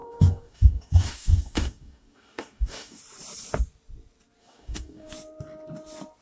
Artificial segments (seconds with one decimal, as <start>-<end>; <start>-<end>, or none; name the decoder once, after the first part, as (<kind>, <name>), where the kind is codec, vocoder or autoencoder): 0.0-3.0 (codec, DAC); 4.4-5.1